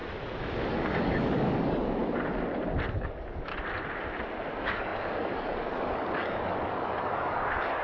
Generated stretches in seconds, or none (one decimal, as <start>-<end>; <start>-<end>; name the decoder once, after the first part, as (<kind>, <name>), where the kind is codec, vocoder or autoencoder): 0.7-2.0 (codec, DAC); 2.9-3.5; 4.5-7.8

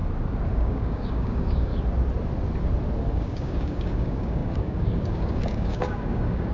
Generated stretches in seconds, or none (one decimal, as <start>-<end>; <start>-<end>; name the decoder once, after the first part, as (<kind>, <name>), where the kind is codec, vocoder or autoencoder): 0.5-1.7 (codec, DAC); 3.1-6.5

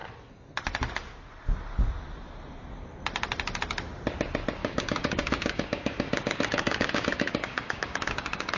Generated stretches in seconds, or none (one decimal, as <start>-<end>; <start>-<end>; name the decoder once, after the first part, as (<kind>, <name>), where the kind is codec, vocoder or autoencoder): 4.6-8.6 (codec, DAC)

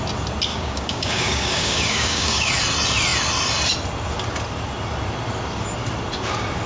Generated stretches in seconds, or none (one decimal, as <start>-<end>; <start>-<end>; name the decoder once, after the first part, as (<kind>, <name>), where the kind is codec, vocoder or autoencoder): 0.5-2.5 (codec, DAC)

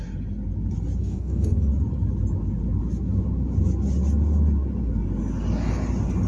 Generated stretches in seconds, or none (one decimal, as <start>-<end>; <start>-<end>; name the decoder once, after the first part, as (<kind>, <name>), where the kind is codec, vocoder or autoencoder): 1.0-1.7 (codec, DAC)

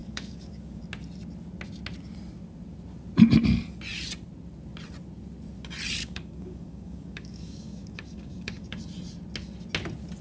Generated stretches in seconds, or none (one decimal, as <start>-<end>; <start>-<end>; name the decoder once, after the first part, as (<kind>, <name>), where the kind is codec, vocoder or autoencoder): 0.0-0.8 (codec, DAC); 6.0-8.8

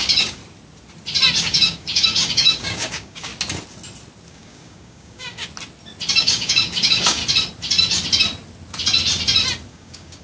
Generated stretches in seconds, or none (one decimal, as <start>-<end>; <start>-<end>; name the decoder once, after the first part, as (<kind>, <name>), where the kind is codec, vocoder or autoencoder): 0.0-0.4 (codec, DAC); 1.4-3.3; 4.3-5.4; 6.2-7.2; 9.7-10.2

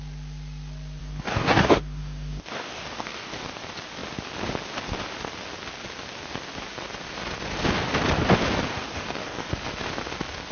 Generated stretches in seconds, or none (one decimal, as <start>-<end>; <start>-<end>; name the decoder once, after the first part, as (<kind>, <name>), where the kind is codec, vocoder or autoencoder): 1.0-3.5 (codec, DAC); 8.7-9.5